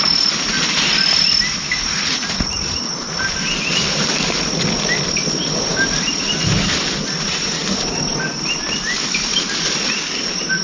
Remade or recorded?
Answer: recorded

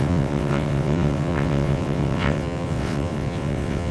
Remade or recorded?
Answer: remade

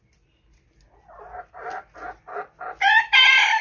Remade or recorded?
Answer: recorded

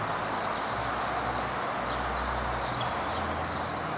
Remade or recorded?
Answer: recorded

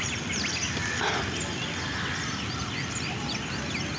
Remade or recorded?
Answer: recorded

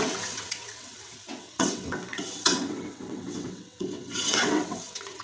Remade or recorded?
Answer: remade